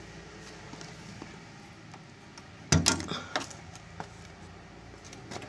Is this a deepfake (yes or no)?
no